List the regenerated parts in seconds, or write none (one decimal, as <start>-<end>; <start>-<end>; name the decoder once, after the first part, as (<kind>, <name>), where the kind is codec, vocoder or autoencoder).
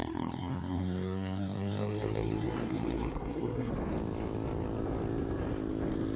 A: 0.0-3.7 (codec, SNAC)